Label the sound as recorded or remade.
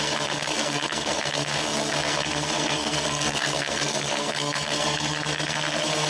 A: remade